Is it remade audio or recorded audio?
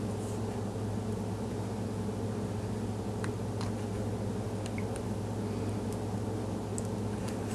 recorded